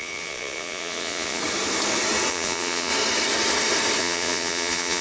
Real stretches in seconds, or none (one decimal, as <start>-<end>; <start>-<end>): 1.4-2.3; 2.9-4.0